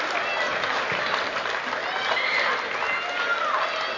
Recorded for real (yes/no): yes